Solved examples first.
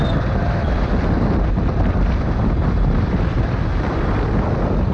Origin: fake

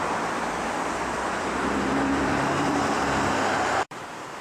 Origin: fake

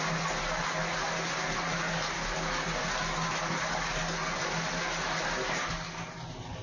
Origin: real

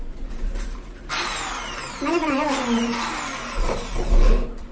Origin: fake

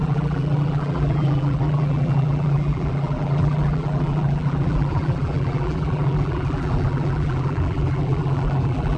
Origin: fake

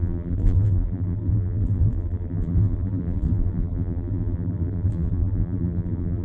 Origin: fake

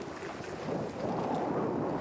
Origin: real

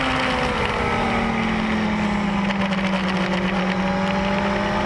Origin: real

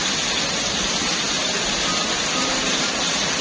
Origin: real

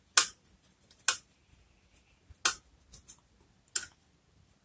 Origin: real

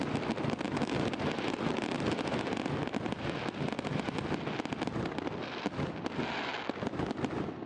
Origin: real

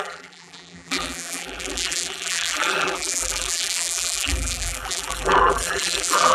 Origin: fake